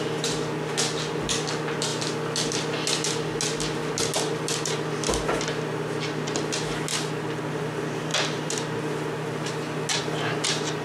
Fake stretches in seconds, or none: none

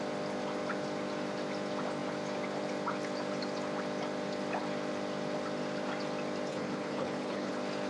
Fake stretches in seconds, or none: 6.5-7.5 (codec, HILCodec)

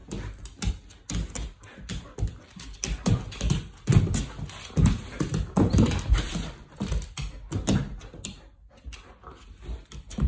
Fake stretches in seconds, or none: none

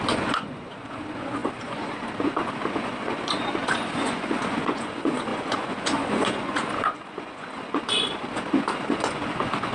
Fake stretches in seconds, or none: 0.0-9.7 (vocoder, Vocos)

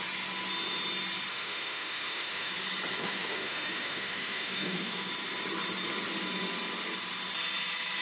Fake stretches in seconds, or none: 1.3-2.5 (autoencoder, DAC-VAE); 3.0-5.1

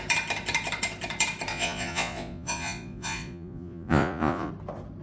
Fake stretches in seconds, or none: 1.5-4.5 (vocoder, Vocos)